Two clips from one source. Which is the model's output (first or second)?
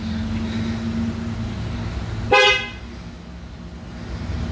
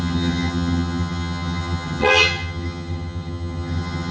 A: second